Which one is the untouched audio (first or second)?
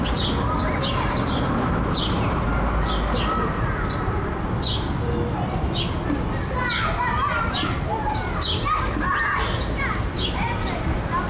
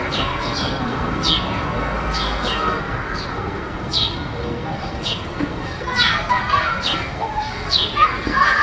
first